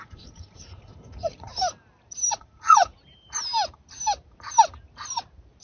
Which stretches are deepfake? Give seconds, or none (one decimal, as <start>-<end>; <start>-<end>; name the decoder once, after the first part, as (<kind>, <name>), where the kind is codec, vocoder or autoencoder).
0.0-1.5 (vocoder, Vocos); 2.3-2.9

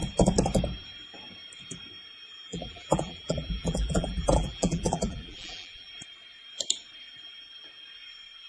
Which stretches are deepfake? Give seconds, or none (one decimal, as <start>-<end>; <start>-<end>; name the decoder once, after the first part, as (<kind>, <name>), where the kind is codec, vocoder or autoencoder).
2.5-5.9 (vocoder, BigVGAN v2)

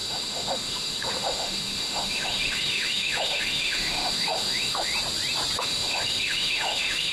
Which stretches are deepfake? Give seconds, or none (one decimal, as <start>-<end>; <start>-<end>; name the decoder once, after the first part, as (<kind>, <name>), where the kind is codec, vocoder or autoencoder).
0.0-4.9 (autoencoder, DAC-VAE); 5.6-7.1